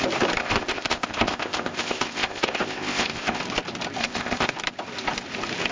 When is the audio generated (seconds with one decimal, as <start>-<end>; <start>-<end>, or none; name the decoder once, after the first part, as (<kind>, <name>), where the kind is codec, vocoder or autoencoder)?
0.4-3.4 (codec, ZipCodec); 4.0-4.5